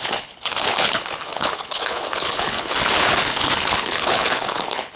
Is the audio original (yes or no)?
no